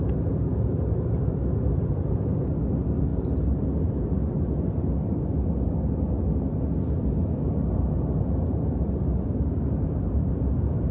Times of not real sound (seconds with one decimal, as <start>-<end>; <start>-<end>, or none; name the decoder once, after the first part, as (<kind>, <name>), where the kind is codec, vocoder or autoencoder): none